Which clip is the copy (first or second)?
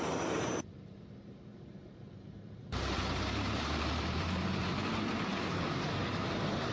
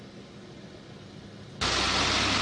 first